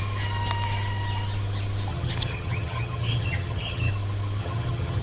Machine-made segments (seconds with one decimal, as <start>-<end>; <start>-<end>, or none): 1.9-3.9; 4.4-5.0